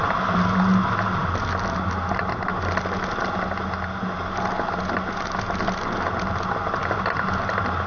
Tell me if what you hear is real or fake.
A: real